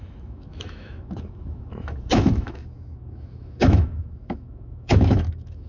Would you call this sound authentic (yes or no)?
no